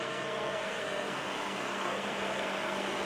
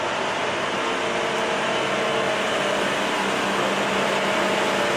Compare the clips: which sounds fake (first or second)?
first